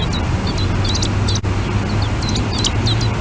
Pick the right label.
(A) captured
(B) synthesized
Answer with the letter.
A